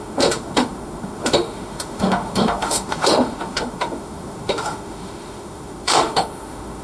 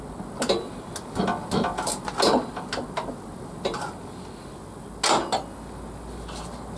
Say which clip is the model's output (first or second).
first